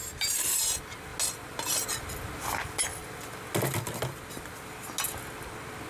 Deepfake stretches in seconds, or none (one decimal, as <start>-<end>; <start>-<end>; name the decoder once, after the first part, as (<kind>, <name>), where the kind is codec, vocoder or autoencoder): none